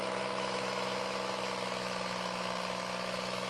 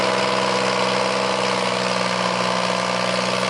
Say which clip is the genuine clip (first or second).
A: second